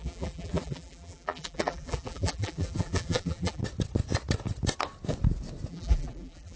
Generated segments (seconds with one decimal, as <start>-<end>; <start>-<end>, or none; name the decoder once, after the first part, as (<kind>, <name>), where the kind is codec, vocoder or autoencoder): 0.0-3.6 (vocoder, BigVGAN v2); 5.7-6.6